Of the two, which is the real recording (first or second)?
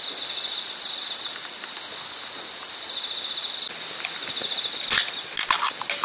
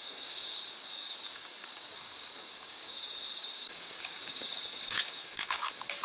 first